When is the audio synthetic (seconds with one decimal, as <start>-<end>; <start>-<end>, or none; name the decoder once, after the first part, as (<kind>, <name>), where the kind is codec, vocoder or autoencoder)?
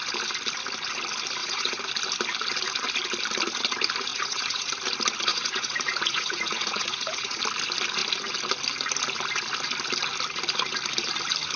1.4-1.9 (vocoder, Vocos); 4.1-4.7; 5.3-7.4